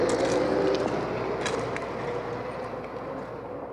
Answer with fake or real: real